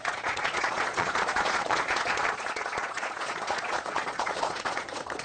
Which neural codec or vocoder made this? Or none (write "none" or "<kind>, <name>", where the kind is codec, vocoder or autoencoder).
vocoder, Vocos